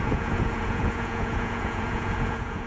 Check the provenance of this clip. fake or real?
fake